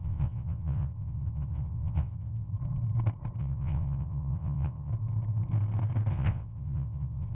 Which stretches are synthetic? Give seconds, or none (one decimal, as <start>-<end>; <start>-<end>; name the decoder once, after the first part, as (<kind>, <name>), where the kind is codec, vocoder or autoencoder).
0.0-2.5 (vocoder, WaveNeXt); 3.4-4.9; 6.1-7.3